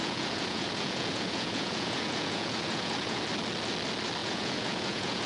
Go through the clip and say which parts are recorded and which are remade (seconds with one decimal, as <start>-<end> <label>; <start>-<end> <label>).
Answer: 0.0-3.2 remade; 3.2-4.2 recorded; 4.2-5.3 remade